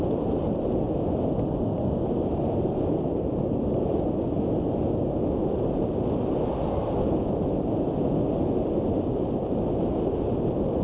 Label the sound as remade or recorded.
recorded